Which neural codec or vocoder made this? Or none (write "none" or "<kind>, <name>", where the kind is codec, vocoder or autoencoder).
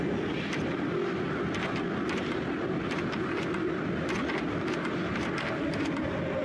none